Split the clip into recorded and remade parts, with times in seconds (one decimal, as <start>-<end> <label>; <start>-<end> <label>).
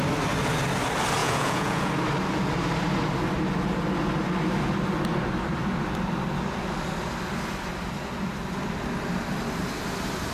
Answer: 0.0-1.2 recorded; 1.2-1.9 remade; 1.9-10.3 recorded